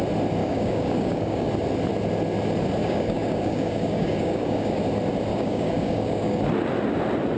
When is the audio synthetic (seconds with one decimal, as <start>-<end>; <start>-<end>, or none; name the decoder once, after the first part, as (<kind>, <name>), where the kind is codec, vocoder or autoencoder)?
0.4-1.5 (codec, DAC); 2.8-4.8; 5.3-6.4